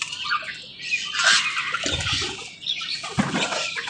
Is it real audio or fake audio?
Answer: real